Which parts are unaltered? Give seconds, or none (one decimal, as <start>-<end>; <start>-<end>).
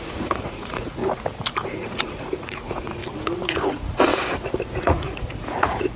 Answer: 1.0-1.5; 3.0-3.5; 4.1-4.8